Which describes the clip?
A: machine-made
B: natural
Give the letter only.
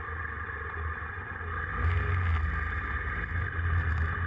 B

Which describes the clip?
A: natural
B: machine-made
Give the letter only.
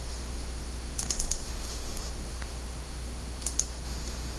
B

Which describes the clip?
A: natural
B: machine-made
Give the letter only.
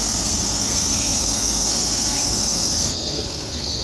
B